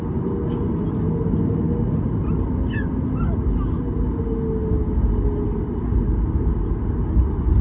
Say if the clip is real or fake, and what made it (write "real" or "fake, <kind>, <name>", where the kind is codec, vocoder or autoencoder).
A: real